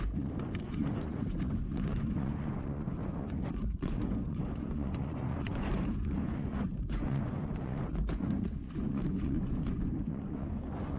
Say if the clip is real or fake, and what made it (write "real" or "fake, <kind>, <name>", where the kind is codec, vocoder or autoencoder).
fake, vocoder, Vocos